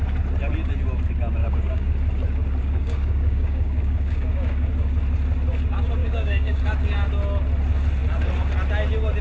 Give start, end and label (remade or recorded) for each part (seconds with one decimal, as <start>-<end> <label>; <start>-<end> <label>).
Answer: 0.0-1.4 recorded; 1.4-1.9 remade; 1.9-2.6 recorded; 2.6-4.7 remade; 4.7-6.0 recorded; 6.0-6.6 remade; 6.6-9.2 recorded